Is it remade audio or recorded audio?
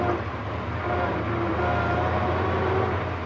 recorded